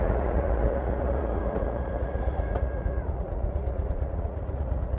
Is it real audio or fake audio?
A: fake